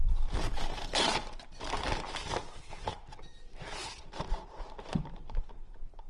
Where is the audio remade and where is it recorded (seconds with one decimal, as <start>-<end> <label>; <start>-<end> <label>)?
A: 0.0-3.3 recorded; 3.3-5.5 remade; 5.5-6.1 recorded